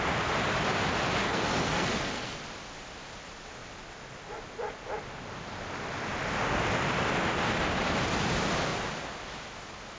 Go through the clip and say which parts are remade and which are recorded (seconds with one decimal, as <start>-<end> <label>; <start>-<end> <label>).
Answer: 0.0-1.2 recorded; 1.2-2.4 remade; 2.4-10.0 recorded

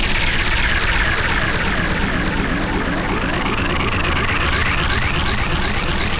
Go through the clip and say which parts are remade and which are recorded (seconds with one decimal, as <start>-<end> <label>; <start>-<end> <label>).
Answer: 0.0-6.2 recorded

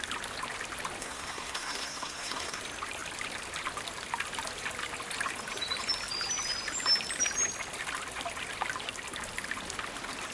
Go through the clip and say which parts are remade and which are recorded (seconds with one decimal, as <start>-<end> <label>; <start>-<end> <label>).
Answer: 0.0-1.0 recorded; 1.0-2.6 remade; 2.6-10.3 recorded